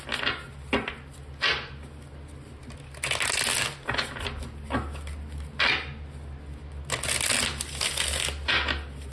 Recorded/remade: recorded